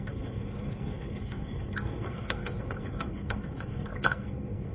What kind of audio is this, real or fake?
fake